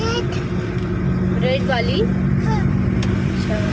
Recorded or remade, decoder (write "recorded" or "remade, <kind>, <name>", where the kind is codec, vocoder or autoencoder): recorded